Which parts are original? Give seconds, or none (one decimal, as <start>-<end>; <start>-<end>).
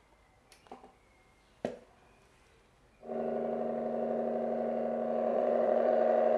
0.0-5.3; 5.9-6.4